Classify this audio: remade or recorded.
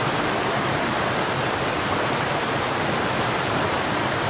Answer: recorded